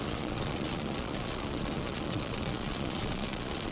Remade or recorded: remade